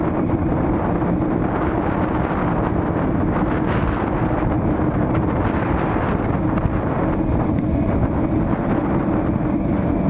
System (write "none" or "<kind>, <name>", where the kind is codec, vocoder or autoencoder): none